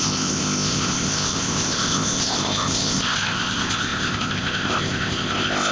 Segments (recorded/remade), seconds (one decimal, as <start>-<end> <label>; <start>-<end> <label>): 0.0-5.7 remade